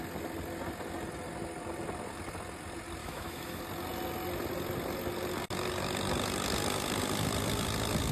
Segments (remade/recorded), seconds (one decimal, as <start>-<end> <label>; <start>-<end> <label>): 0.0-3.0 recorded; 3.0-3.6 remade; 3.6-8.1 recorded